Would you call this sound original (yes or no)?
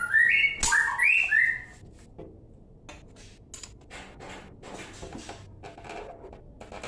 yes